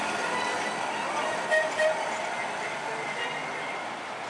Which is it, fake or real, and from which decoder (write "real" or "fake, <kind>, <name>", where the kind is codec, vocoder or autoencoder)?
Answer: real